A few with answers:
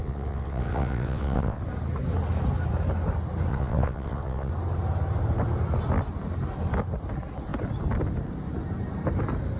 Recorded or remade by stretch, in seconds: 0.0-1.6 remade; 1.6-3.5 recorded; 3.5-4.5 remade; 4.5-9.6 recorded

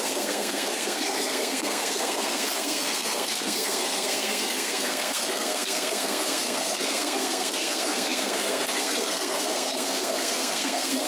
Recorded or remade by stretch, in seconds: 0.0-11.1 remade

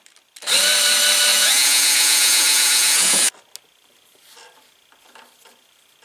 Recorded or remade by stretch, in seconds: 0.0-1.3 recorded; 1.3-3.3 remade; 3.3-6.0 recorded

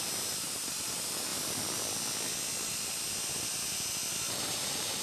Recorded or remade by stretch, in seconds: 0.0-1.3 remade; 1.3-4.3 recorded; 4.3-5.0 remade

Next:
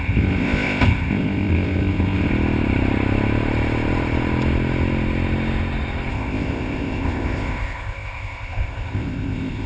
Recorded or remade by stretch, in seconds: 0.0-2.3 remade; 2.3-6.1 recorded; 6.1-9.7 remade